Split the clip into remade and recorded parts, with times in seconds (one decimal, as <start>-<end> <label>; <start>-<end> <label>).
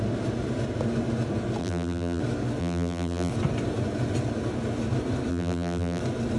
0.0-1.6 recorded; 1.6-2.2 remade; 2.2-2.6 recorded; 2.6-3.3 remade; 3.3-5.3 recorded; 5.3-6.0 remade; 6.0-6.4 recorded